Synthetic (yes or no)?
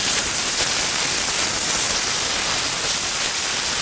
no